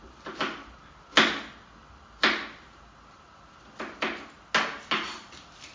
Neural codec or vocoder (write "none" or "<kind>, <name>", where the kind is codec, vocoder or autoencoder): none